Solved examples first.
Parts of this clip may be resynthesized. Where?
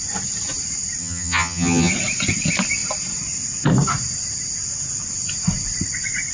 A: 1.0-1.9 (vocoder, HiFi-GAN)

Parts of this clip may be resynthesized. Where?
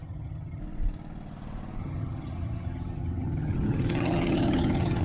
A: 0.0-0.6 (vocoder, HiFi-GAN); 1.8-5.0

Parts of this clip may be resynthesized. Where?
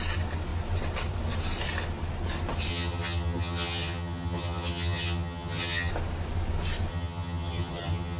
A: 2.7-5.9 (vocoder, HiFi-GAN); 6.9-8.2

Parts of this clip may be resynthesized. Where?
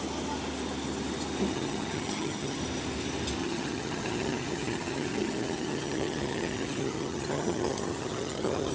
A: 1.5-2.6 (vocoder, HiFi-GAN); 3.4-8.7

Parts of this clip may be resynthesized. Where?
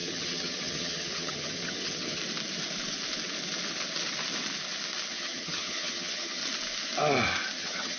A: 0.0-2.2 (vocoder, HiFi-GAN); 5.1-6.4; 7.6-8.0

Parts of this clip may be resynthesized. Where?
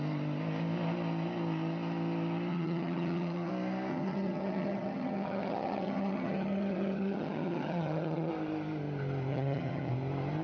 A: 2.5-3.5 (vocoder, HiFi-GAN); 3.9-8.3; 9.3-9.9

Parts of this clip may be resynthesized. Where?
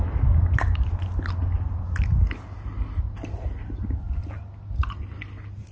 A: none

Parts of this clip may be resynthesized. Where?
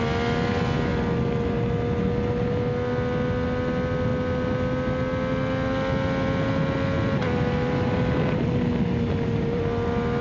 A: none